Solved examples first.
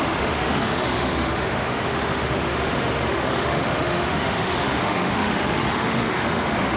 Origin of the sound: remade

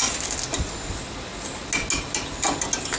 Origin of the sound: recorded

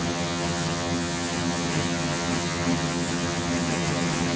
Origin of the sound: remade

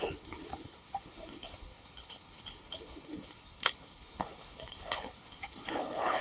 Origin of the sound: remade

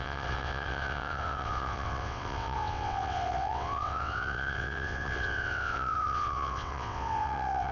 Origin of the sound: remade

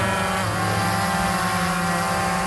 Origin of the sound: recorded